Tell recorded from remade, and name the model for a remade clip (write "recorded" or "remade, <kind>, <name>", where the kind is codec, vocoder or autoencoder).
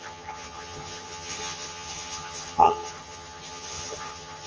remade, vocoder, HiFi-GAN